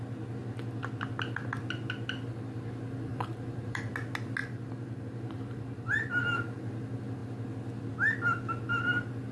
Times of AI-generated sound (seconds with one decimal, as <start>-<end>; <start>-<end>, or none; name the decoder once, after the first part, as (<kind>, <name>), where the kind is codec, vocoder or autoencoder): 3.1-3.8 (vocoder, BigVGAN v2); 4.4-6.2